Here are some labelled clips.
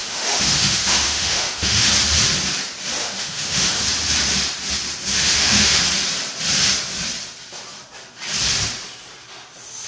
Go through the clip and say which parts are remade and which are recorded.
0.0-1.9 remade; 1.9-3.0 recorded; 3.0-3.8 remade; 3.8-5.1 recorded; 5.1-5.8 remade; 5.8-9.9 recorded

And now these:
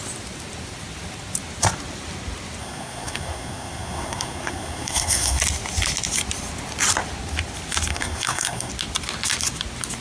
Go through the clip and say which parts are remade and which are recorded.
0.0-2.6 recorded; 2.6-5.4 remade; 5.4-7.9 recorded; 7.9-8.7 remade; 8.7-10.0 recorded

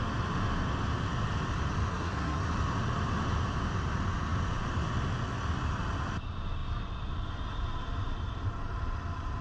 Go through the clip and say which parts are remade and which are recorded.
0.0-1.9 recorded; 1.9-2.4 remade; 2.4-9.4 recorded

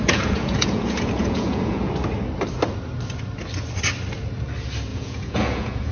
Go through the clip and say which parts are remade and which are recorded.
0.0-1.9 remade; 1.9-4.9 recorded; 4.9-5.9 remade

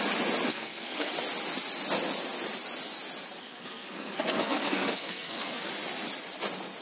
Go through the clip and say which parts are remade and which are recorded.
0.0-0.5 recorded; 0.5-1.1 remade; 1.1-3.4 recorded; 3.4-5.7 remade; 5.7-6.8 recorded

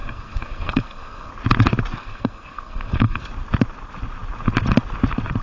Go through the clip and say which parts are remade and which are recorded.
0.0-1.3 remade; 1.3-2.0 recorded; 2.0-3.3 remade; 3.3-5.4 recorded

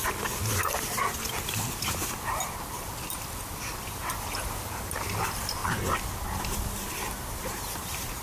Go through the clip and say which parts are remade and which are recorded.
0.0-4.2 recorded; 4.2-5.6 remade; 5.6-6.4 recorded; 6.4-8.2 remade

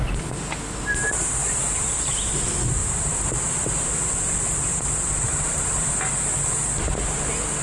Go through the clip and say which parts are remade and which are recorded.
0.0-1.4 recorded; 1.4-2.1 remade; 2.1-2.8 recorded; 2.8-3.4 remade; 3.4-4.7 recorded; 4.7-6.0 remade; 6.0-7.6 recorded